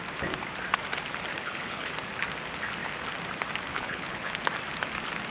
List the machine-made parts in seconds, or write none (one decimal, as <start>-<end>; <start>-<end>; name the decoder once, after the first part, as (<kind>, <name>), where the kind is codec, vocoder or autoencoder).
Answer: 1.3-1.9 (codec, HILCodec); 3.7-4.3